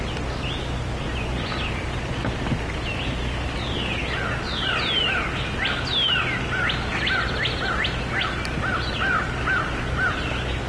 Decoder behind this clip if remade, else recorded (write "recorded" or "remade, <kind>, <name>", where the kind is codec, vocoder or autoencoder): recorded